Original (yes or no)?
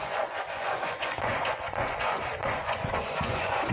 no